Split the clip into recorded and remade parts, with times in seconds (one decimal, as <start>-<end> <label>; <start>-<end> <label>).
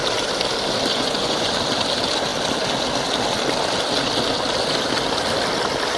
0.0-0.9 recorded; 0.9-1.5 remade; 1.5-6.0 recorded